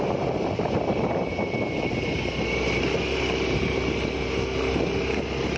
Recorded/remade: recorded